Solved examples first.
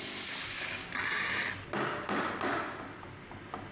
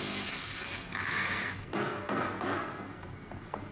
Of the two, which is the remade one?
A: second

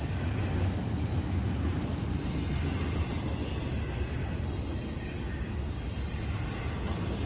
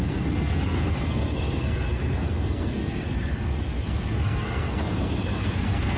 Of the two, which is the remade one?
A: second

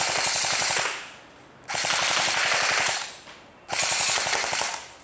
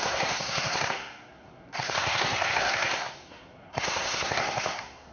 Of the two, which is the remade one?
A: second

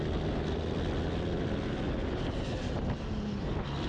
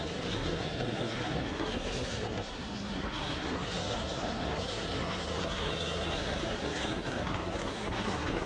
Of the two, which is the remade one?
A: second